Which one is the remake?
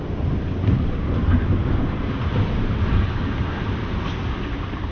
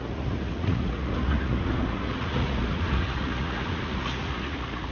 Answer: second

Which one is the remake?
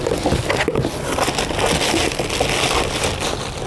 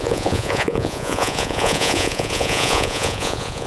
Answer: second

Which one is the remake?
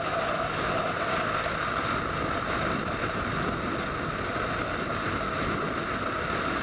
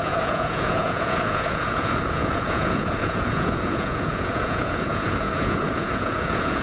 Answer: second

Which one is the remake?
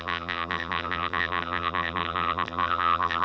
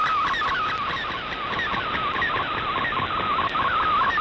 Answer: first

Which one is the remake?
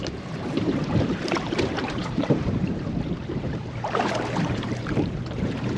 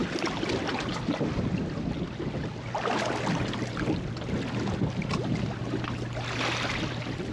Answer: first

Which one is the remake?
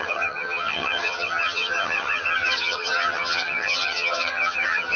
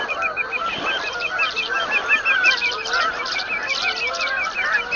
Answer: first